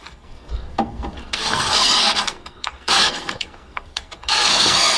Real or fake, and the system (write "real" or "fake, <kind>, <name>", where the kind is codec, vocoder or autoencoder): fake, codec, SNAC